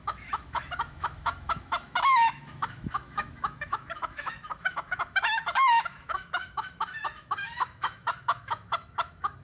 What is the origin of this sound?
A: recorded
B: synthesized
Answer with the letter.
B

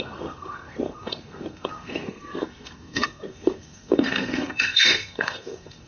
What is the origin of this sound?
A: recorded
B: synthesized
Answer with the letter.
B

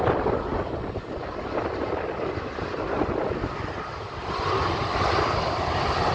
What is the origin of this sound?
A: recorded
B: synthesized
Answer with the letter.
A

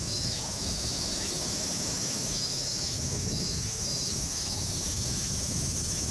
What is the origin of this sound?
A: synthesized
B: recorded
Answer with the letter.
A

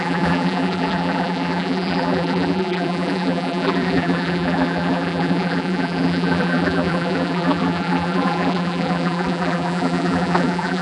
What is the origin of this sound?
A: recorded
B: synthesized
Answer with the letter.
B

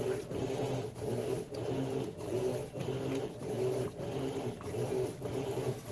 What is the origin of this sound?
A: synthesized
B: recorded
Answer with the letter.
B